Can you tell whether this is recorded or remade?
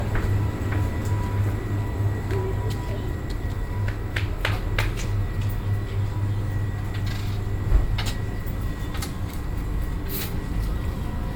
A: recorded